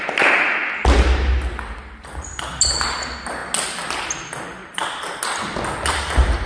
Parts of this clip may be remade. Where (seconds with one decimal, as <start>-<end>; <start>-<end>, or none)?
none